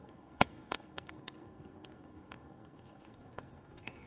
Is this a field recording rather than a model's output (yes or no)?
no